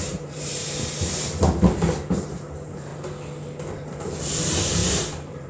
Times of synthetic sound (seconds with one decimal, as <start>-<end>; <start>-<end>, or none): 0.0-0.6; 2.1-2.9; 3.7-5.5